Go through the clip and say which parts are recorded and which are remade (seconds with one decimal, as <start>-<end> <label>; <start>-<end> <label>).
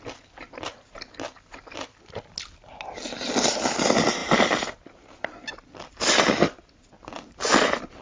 0.0-8.0 recorded